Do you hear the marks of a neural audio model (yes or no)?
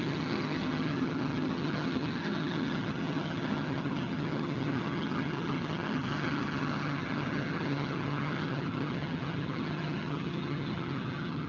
yes